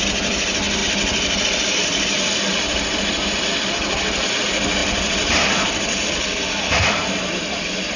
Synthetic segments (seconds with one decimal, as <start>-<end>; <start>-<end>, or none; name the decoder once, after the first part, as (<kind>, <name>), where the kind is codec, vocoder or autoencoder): 4.8-7.2 (vocoder, BigVGAN v2)

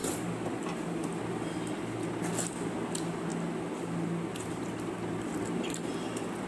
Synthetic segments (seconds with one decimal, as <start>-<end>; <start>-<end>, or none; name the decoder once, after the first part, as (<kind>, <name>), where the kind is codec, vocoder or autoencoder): 0.0-1.2 (vocoder, BigVGAN v2)

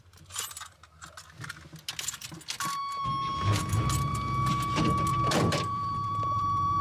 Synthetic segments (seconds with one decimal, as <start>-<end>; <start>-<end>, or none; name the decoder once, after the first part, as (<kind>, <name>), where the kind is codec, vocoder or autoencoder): 5.1-6.8 (vocoder, BigVGAN v2)

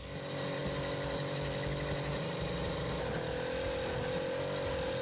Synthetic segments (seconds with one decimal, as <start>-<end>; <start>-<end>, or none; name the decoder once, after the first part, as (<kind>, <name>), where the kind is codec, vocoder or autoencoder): none

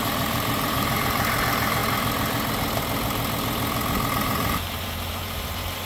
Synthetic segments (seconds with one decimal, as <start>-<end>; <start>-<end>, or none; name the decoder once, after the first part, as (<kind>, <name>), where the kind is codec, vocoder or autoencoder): 0.0-1.8 (vocoder, BigVGAN v2); 4.1-5.9

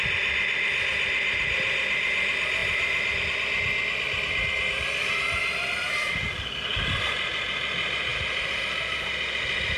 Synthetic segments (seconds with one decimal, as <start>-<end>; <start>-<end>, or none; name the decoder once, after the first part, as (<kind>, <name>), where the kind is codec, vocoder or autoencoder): 5.4-7.0 (vocoder, BigVGAN v2); 8.1-8.6